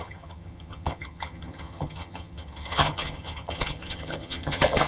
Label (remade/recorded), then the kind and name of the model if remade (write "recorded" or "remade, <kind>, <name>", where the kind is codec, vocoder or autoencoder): remade, vocoder, HiFi-GAN